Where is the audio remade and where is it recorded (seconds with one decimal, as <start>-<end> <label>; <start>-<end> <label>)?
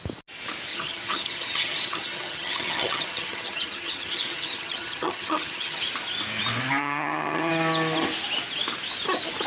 0.0-0.7 recorded; 0.7-5.8 remade; 5.8-6.8 recorded; 6.8-7.5 remade; 7.5-9.5 recorded